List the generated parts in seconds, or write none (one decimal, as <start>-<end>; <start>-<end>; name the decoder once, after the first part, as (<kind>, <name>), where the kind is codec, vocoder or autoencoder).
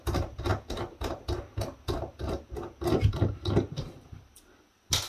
none